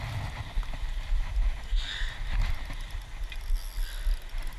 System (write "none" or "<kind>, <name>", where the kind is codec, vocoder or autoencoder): none